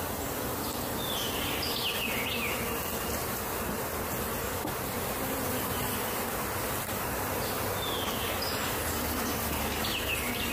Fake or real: real